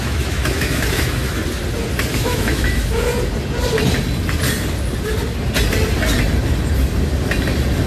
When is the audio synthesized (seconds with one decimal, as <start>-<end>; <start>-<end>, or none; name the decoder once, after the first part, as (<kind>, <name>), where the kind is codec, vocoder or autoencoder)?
0.0-1.4 (autoencoder, DAC-VAE); 2.1-3.1